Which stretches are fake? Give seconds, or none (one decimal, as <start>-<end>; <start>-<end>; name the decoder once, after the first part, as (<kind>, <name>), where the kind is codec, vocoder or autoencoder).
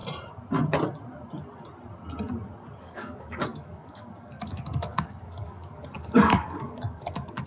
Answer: 2.8-7.5 (codec, DAC)